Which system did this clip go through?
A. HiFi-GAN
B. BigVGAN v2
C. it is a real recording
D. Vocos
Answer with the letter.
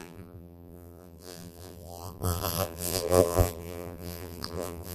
B